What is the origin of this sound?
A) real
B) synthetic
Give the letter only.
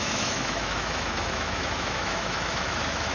B